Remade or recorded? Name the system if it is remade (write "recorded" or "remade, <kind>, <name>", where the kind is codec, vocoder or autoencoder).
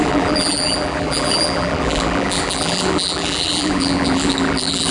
remade, vocoder, BigVGAN v2